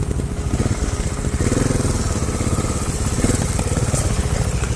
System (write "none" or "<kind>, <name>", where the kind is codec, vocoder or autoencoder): none